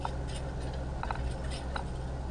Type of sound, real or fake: real